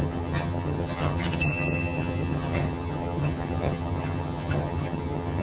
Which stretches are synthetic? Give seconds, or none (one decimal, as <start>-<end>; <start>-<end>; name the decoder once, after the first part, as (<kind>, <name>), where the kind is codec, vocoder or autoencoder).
0.0-5.4 (vocoder, HiFi-GAN)